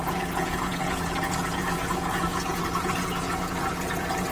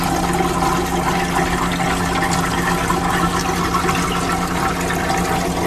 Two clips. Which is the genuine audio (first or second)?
second